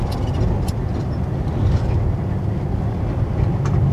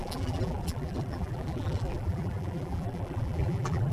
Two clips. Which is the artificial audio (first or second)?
second